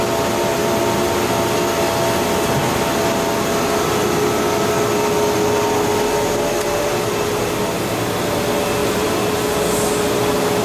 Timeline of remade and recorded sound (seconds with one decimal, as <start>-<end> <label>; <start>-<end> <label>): 0.0-8.8 recorded; 8.8-9.4 remade; 9.4-10.6 recorded